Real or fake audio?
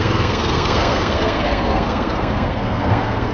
fake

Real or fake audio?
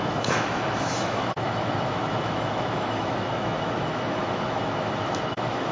fake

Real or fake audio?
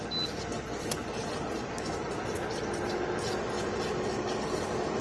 real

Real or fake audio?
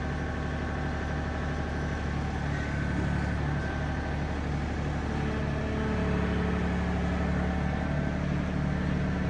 real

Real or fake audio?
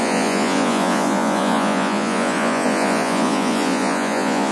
fake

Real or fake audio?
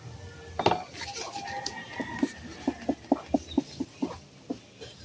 real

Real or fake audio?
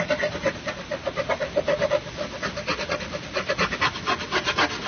real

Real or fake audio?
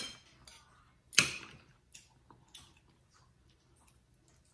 real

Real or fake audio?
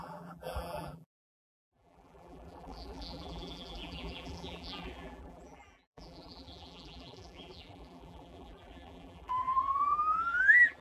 fake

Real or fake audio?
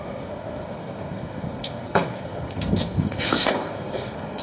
fake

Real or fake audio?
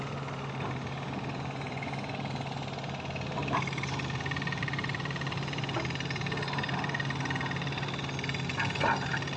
real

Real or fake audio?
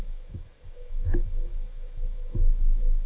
fake